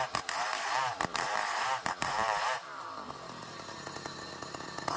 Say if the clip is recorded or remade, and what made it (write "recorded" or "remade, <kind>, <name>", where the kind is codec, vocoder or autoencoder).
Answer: recorded